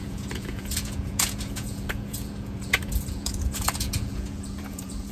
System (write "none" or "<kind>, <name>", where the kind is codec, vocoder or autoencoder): vocoder, Vocos